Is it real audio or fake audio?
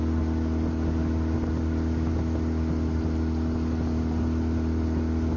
real